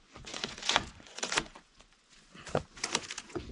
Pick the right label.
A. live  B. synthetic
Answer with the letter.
B